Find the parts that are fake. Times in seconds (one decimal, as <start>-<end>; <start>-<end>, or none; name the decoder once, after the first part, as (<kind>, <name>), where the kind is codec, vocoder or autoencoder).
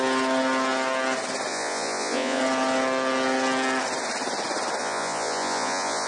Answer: 1.5-2.4 (vocoder, Vocos); 4.8-6.1